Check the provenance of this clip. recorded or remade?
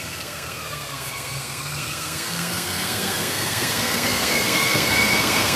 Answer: remade